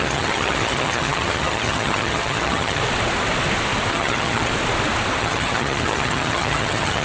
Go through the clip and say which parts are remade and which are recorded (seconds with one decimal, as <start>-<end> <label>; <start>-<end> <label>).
0.0-2.8 remade; 2.8-3.9 recorded; 3.9-4.5 remade; 4.5-5.2 recorded; 5.2-7.0 remade